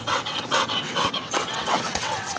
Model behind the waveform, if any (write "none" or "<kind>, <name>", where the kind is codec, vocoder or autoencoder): vocoder, WaveNeXt